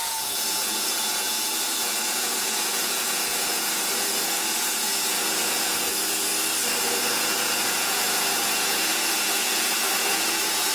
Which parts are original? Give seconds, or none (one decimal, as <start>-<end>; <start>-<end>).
6.3-6.8